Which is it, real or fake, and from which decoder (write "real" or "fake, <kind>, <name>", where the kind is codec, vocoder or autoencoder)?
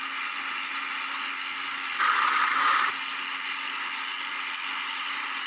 real